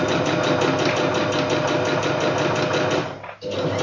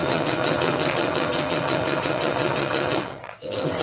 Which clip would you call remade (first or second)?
second